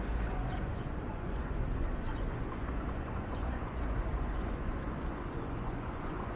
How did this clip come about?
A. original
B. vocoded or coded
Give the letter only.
B